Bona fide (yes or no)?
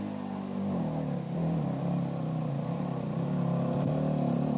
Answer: yes